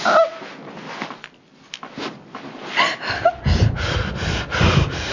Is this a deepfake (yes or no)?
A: no